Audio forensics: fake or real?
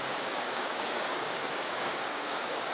fake